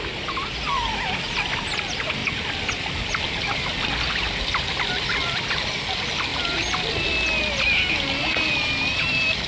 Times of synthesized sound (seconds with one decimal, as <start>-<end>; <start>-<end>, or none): none